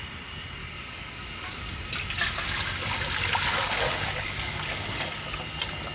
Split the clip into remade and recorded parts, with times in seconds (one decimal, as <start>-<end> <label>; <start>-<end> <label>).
0.0-0.6 recorded; 0.6-1.6 remade; 1.6-3.5 recorded; 3.5-4.9 remade; 4.9-5.9 recorded